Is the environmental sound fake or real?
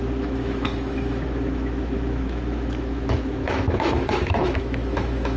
fake